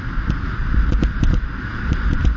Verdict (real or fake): fake